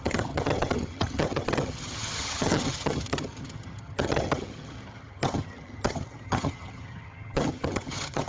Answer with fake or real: fake